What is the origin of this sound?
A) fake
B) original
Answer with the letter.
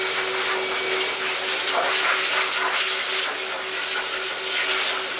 B